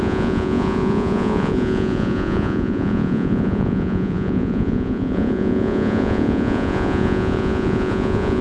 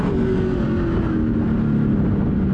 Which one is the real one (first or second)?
second